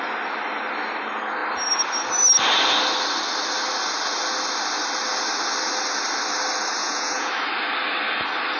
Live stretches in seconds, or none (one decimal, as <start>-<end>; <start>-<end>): 0.0-6.8; 7.3-8.6